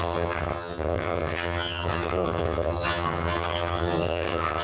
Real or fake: fake